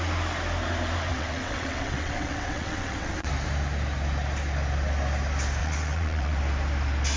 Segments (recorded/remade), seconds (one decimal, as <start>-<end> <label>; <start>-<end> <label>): 0.0-1.1 recorded; 1.1-3.3 remade; 3.3-5.6 recorded; 5.6-6.4 remade; 6.4-7.2 recorded